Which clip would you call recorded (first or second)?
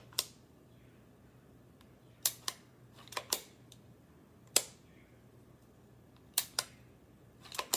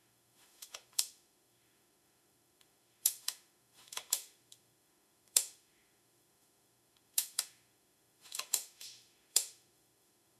first